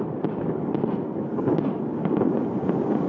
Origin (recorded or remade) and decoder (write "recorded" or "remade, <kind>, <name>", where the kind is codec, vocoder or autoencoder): remade, vocoder, BigVGAN v2